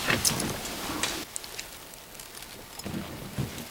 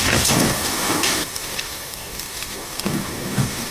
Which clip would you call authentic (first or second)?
first